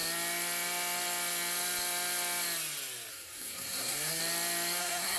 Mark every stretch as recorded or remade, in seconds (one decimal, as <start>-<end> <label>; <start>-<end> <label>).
0.0-3.1 recorded; 3.1-4.2 remade; 4.2-4.8 recorded; 4.8-5.2 remade